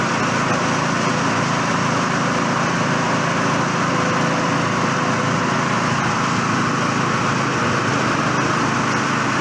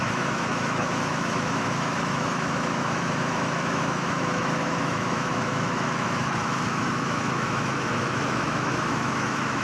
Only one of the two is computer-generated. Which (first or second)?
second